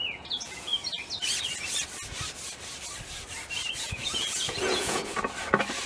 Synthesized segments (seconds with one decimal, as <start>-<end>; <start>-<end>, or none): 0.0-0.7; 3.8-5.1